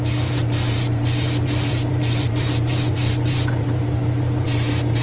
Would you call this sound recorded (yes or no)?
no